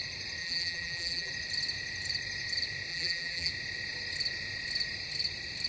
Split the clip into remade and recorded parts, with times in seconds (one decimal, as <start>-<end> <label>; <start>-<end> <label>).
0.0-0.4 recorded; 0.4-1.3 remade; 1.3-2.9 recorded; 2.9-3.5 remade; 3.5-5.7 recorded